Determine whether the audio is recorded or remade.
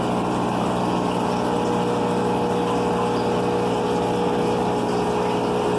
recorded